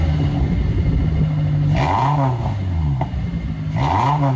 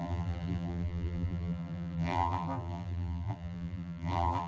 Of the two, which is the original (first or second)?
first